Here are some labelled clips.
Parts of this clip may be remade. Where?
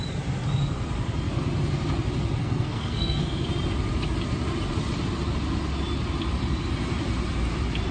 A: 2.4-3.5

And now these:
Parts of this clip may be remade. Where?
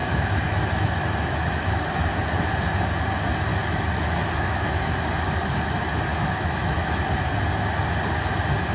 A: 0.0-2.2; 3.5-4.9; 6.1-7.0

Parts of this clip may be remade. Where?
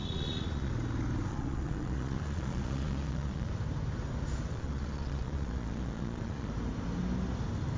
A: 0.0-0.7; 1.3-3.5; 4.5-6.5